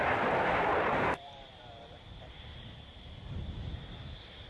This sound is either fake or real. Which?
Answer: fake